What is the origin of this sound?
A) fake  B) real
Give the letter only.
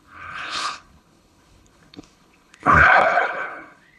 A